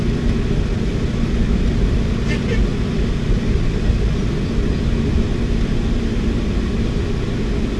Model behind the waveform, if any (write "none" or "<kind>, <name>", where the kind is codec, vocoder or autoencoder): none